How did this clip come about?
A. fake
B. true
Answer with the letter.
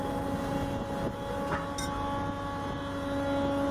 B